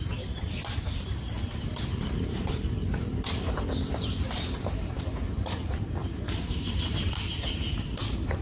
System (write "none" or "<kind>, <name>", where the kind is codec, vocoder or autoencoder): vocoder, BigVGAN v2